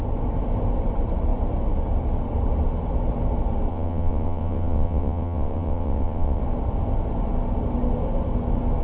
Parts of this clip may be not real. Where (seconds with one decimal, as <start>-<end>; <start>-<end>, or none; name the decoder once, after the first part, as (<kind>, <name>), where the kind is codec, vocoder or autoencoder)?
3.7-6.4 (vocoder, WaveNeXt)